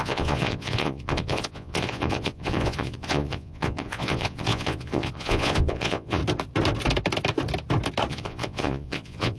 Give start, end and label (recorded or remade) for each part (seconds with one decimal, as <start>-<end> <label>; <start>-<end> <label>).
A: 0.0-6.2 remade; 6.2-8.1 recorded; 8.1-9.4 remade